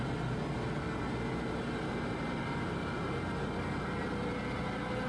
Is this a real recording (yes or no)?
yes